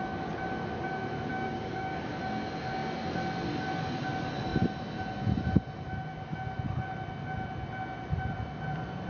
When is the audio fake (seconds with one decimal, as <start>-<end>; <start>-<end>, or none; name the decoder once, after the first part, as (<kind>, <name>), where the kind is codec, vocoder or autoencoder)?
1.3-2.1 (codec, DAC)